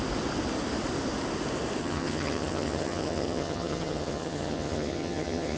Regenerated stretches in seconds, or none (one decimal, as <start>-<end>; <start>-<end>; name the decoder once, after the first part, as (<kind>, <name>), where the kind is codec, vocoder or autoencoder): 1.8-5.6 (vocoder, HiFi-GAN)